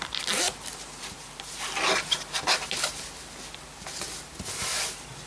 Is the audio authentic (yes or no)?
yes